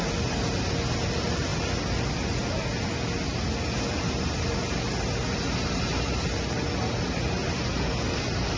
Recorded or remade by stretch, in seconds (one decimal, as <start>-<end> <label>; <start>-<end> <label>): 0.0-5.9 recorded; 5.9-6.8 remade; 6.8-8.6 recorded